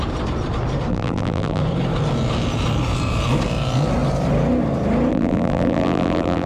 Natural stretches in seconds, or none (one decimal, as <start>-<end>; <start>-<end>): 0.0-0.9; 1.6-5.1